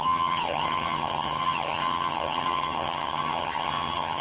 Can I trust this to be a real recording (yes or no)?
no